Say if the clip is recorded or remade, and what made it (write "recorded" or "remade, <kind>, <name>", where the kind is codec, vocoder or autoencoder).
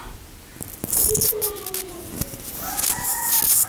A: recorded